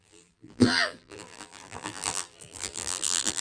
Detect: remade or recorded remade